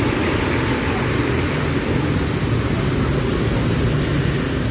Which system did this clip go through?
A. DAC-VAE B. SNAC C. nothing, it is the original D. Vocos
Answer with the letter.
C